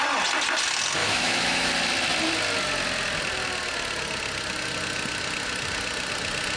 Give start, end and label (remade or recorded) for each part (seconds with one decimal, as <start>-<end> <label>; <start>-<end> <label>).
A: 0.0-1.0 recorded; 1.0-1.7 remade; 1.7-6.6 recorded